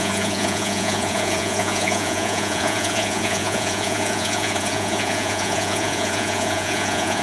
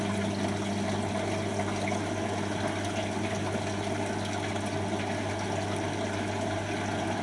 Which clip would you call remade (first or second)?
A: first